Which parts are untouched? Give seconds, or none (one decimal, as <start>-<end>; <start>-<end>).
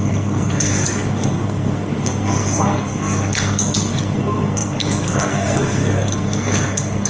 none